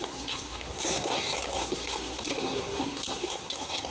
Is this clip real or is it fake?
fake